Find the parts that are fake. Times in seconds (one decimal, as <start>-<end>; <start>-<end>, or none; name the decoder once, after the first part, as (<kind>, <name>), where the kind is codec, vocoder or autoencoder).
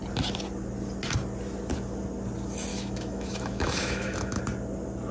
2.7-4.4 (autoencoder, DAC-VAE)